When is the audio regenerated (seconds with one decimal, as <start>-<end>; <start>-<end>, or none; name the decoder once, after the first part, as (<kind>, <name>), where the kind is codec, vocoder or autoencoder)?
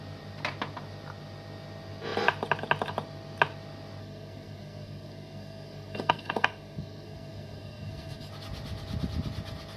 4.0-8.3 (codec, SNAC)